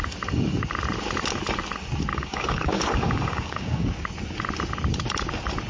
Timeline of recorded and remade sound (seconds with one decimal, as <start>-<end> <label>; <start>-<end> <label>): 0.0-2.1 recorded; 2.1-3.9 remade; 3.9-5.7 recorded